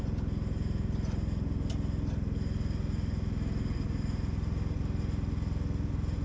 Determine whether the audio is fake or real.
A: real